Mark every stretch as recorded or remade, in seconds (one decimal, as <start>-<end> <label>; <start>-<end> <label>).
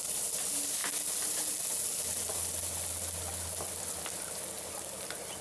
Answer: 0.0-5.4 recorded